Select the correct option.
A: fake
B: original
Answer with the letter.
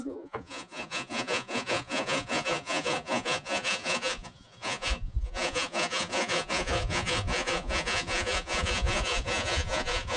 A